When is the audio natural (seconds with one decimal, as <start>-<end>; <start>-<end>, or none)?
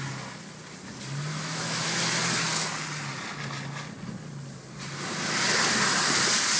0.0-1.3; 2.0-6.6